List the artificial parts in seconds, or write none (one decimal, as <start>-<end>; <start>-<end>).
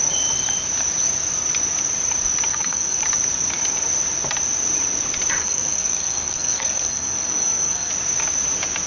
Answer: 2.5-3.0; 5.4-7.9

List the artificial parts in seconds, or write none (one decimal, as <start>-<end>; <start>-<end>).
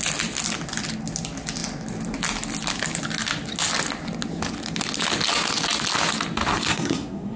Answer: 6.7-7.4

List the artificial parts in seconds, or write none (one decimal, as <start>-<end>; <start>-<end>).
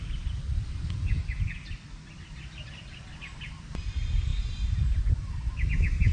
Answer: none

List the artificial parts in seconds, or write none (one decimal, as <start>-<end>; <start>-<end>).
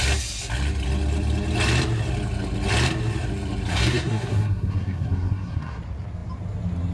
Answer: 3.7-5.8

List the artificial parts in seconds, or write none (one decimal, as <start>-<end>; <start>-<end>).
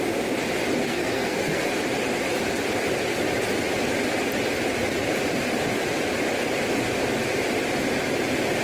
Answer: 0.8-1.7